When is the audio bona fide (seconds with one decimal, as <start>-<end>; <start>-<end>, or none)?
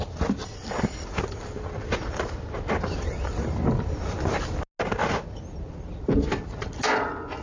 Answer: 0.0-7.4